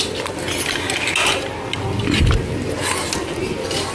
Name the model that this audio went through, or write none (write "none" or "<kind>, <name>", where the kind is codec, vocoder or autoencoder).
none